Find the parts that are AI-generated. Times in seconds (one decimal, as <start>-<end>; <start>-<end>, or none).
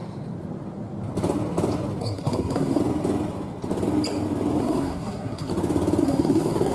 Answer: 2.0-2.8; 4.6-5.5; 6.0-6.7